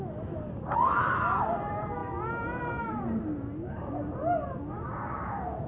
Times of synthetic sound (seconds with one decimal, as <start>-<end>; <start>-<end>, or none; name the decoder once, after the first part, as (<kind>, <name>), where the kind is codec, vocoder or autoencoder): none